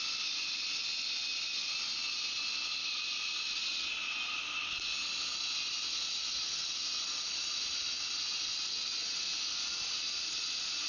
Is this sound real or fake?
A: real